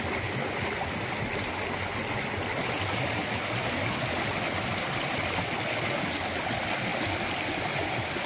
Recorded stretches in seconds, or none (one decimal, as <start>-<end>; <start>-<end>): 0.0-8.3